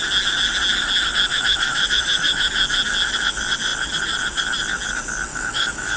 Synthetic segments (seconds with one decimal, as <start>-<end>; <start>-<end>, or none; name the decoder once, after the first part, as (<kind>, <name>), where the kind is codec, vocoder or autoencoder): 1.3-2.5 (autoencoder, DAC-VAE); 5.3-6.0